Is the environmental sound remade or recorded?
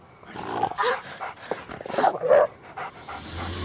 recorded